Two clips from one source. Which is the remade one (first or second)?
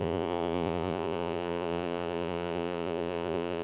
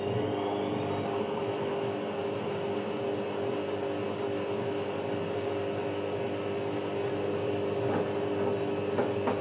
first